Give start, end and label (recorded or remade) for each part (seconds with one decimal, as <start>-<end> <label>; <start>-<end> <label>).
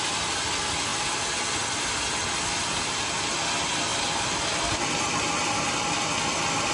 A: 0.0-6.7 recorded